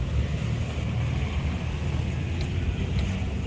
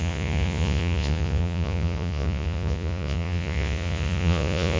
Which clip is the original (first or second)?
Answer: first